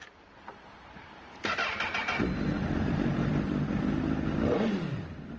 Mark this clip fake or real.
real